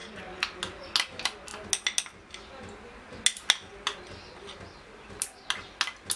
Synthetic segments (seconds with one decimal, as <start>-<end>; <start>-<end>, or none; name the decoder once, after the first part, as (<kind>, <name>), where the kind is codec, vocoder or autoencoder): none